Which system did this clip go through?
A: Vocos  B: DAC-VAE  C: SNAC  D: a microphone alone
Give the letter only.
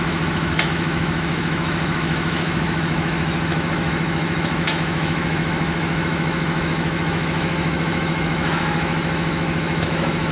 B